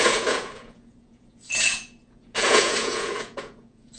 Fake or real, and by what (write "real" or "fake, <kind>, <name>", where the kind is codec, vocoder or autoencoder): fake, vocoder, Vocos